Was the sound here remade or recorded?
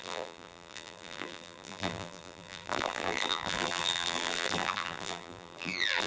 remade